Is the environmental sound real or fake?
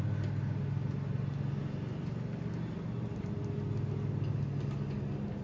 real